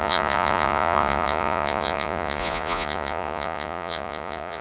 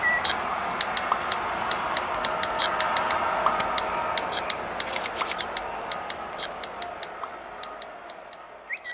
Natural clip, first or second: second